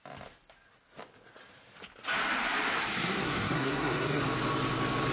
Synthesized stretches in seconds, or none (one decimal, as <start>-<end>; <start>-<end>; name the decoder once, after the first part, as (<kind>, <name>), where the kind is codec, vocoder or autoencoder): 2.7-4.2 (codec, SNAC)